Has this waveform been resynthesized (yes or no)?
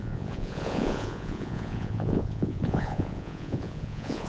yes